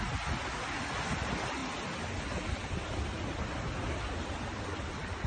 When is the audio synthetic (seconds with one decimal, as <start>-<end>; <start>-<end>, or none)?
none